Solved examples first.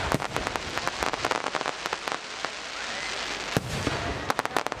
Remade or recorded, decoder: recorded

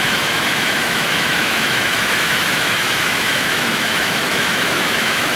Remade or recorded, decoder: remade, autoencoder, DAC-VAE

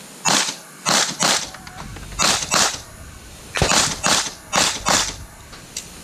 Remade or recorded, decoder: recorded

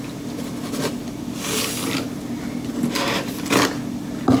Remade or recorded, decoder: recorded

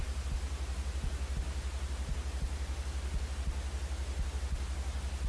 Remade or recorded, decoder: recorded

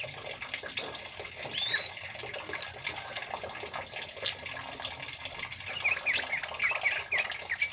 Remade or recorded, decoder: recorded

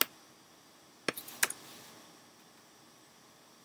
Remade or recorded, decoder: recorded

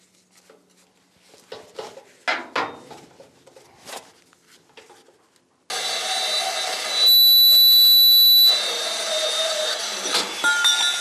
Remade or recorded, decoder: recorded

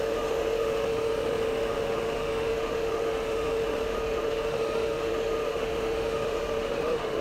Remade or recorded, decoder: remade, autoencoder, DAC-VAE